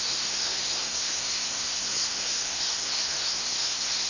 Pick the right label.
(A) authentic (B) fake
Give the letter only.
B